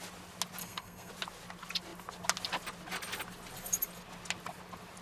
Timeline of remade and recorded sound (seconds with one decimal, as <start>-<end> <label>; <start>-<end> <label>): 0.0-0.6 recorded; 0.6-1.1 remade; 1.1-5.0 recorded